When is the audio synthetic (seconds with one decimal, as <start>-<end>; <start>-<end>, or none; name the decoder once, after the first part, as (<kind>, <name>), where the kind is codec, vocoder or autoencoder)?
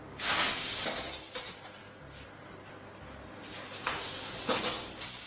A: none